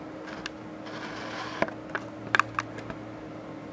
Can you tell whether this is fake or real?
real